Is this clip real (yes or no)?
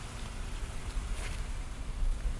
yes